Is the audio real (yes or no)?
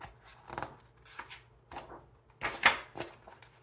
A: yes